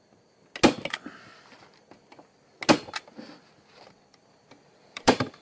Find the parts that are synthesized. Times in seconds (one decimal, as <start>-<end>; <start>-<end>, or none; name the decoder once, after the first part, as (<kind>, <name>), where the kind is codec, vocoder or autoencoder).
4.1-5.4 (vocoder, BigVGAN v2)